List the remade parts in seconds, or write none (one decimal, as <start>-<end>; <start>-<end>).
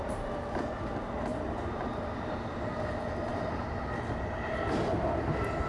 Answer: 0.0-0.5; 1.3-2.6; 3.3-3.9